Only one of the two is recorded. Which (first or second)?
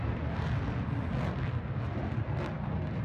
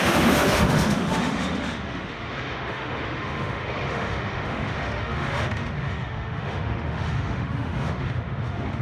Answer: first